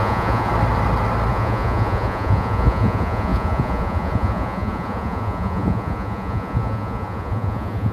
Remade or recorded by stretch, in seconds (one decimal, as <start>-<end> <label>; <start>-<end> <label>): 0.0-0.5 remade; 0.5-1.3 recorded; 1.3-7.9 remade